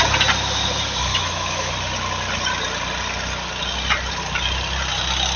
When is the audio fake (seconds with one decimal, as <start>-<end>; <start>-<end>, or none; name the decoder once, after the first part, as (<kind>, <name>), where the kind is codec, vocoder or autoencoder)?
1.1-1.7 (autoencoder, DAC-VAE)